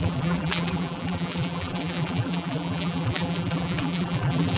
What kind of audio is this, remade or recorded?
remade